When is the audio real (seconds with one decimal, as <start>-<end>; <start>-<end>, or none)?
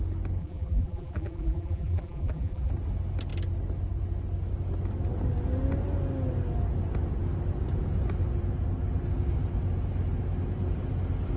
0.0-0.4; 2.7-11.4